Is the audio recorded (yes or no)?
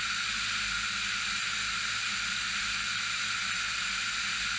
yes